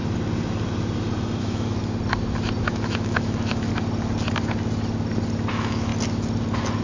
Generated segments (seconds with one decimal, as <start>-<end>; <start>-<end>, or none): 1.4-1.8; 2.6-3.7; 5.5-5.9